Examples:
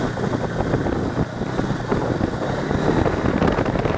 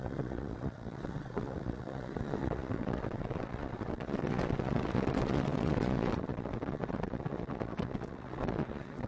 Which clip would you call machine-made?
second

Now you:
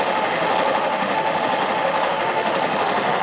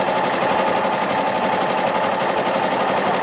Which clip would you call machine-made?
first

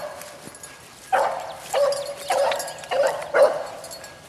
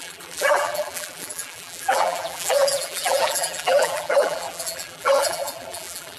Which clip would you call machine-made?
second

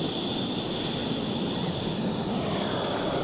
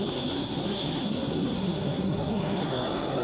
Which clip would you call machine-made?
second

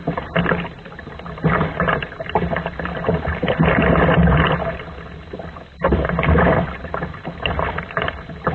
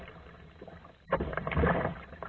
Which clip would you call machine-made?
second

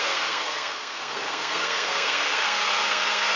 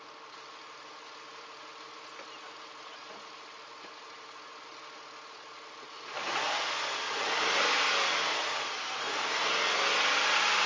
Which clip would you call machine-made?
first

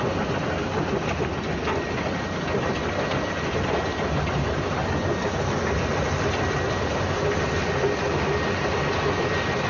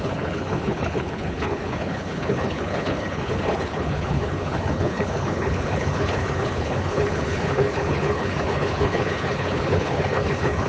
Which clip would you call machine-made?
second